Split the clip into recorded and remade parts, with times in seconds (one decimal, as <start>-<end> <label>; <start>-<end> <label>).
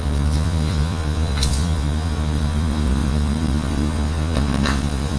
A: 0.0-5.2 remade